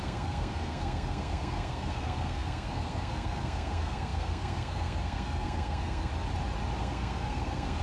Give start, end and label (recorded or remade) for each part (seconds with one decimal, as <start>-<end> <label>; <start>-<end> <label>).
0.0-6.1 remade; 6.1-6.8 recorded; 6.8-7.8 remade